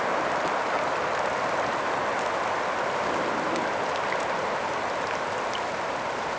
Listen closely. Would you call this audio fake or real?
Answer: real